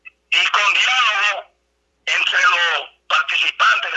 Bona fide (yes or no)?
no